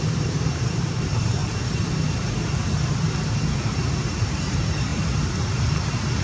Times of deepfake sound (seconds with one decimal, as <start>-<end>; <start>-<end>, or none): 0.0-1.4; 2.9-6.2